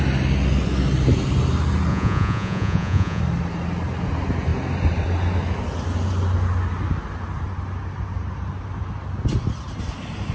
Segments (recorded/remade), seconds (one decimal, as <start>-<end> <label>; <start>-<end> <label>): 0.0-1.9 recorded; 1.9-3.2 remade; 3.2-10.3 recorded